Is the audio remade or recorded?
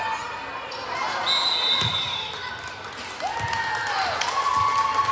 recorded